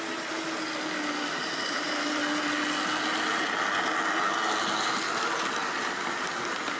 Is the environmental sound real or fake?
real